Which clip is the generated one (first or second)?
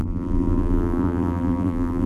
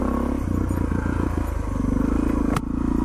first